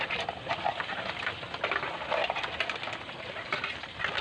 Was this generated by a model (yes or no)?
no